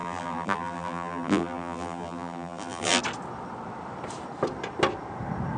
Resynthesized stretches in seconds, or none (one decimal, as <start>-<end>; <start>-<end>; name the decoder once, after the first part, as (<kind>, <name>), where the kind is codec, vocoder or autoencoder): 0.0-3.0 (vocoder, BigVGAN v2)